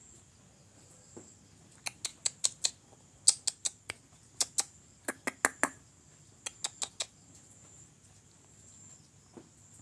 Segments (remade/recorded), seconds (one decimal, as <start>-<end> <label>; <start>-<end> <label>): 0.0-0.6 recorded; 0.6-1.4 remade; 1.4-9.8 recorded